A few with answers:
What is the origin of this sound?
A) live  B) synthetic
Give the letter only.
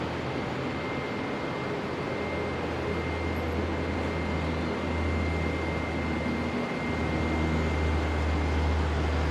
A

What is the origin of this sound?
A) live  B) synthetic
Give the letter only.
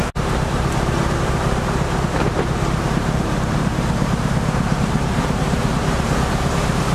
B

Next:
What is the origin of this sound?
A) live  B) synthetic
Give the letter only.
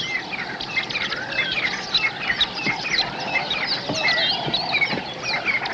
A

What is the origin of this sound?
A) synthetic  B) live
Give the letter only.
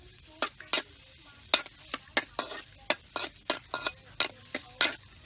B